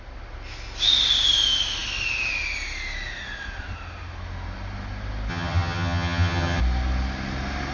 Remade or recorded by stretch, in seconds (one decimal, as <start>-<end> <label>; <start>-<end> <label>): 0.0-5.3 recorded; 5.3-6.6 remade; 6.6-7.7 recorded